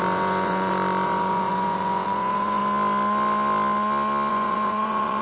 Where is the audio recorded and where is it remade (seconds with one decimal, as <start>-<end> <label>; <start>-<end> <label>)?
0.0-2.6 remade; 2.6-4.3 recorded; 4.3-5.2 remade